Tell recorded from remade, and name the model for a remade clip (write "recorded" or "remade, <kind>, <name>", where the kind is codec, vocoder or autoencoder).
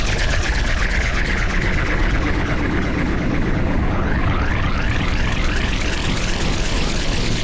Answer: remade, codec, HILCodec